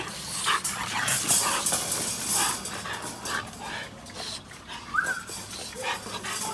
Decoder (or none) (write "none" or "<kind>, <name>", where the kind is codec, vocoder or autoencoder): none